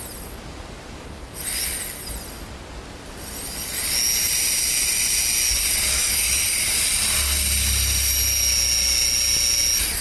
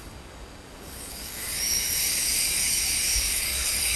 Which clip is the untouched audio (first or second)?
first